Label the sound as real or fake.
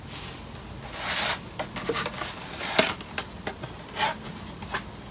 real